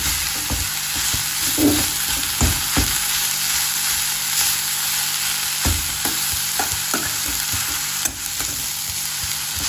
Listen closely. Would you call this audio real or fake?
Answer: real